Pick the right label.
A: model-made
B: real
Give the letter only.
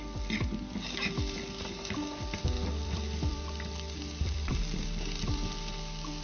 A